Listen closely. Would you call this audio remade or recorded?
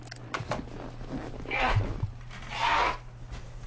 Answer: recorded